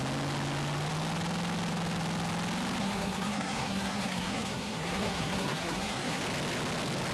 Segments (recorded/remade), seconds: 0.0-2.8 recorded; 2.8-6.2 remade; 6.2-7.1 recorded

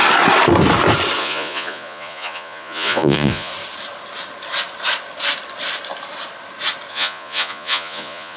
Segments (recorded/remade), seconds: 0.0-1.2 recorded; 1.2-3.5 remade; 3.5-6.9 recorded; 6.9-8.4 remade

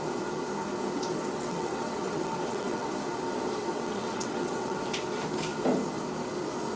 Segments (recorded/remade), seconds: 0.0-1.3 recorded; 1.3-2.9 remade; 2.9-3.6 recorded; 3.6-4.8 remade; 4.8-6.8 recorded